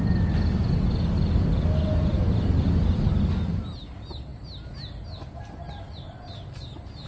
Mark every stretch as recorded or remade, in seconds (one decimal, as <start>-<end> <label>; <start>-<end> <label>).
0.0-7.1 recorded